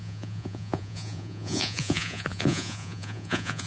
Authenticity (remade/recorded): remade